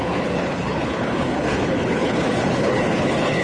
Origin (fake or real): fake